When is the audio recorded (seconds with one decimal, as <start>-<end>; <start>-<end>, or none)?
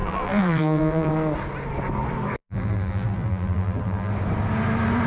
1.1-2.4; 4.1-5.1